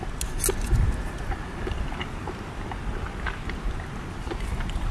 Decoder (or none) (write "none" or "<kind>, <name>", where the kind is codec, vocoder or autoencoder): none